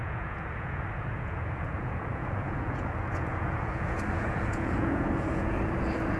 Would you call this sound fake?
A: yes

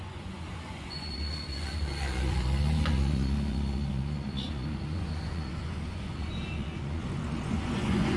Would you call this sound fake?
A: yes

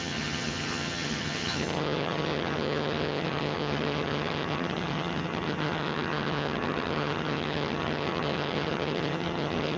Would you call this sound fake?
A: yes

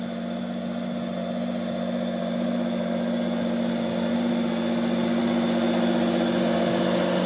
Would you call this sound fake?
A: no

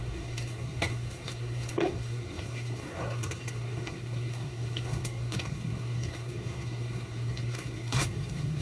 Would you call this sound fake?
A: yes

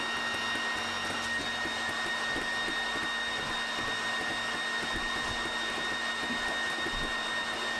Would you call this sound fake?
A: no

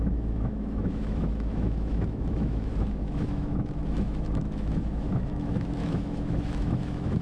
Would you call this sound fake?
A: yes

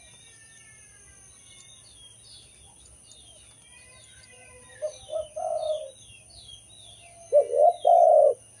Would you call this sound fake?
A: no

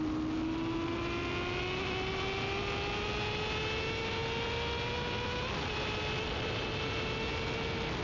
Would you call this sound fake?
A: no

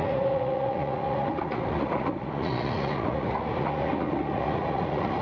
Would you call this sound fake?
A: yes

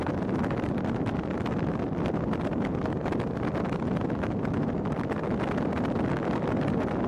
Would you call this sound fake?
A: no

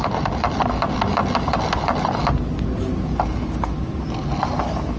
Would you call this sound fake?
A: no